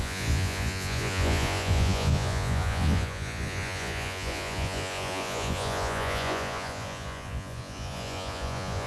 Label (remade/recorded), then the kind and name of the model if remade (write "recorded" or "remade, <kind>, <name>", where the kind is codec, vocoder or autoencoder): remade, vocoder, Vocos